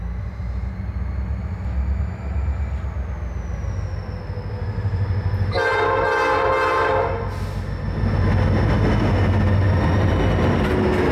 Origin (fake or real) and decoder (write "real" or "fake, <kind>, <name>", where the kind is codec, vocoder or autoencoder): real